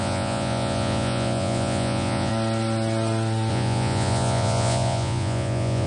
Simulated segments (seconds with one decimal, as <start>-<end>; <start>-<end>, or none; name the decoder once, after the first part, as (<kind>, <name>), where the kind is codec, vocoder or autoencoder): 0.0-2.3 (vocoder, Vocos); 3.5-5.9